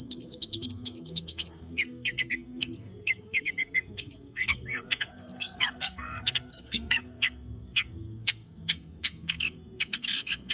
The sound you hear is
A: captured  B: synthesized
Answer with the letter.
B